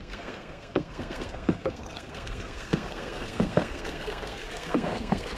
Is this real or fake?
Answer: fake